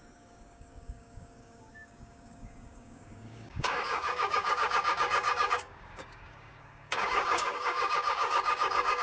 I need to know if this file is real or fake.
fake